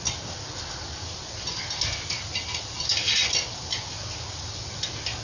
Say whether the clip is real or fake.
real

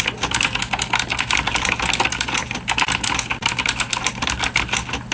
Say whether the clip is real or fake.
real